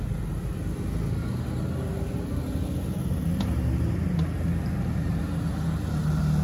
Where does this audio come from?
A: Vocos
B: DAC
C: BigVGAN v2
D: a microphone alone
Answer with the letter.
D